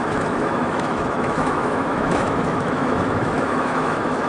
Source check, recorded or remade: remade